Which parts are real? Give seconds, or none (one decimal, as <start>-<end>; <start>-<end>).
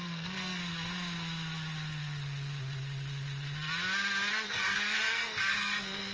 0.6-4.3